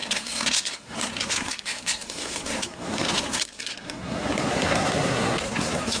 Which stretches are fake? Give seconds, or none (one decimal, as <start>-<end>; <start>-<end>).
0.0-6.0